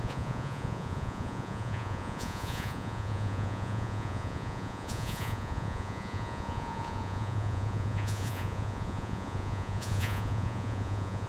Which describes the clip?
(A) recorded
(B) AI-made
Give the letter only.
B